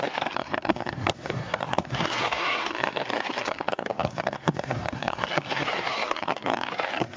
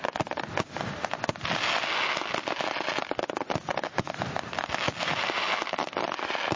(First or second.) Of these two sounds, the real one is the second